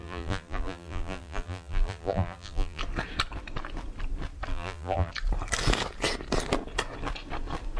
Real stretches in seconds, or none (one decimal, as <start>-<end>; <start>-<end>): 2.8-4.5; 5.1-7.8